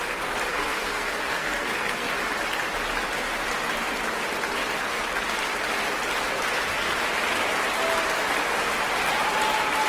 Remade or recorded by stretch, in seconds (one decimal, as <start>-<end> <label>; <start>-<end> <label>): 0.0-0.5 recorded; 0.5-2.1 remade; 2.1-9.9 recorded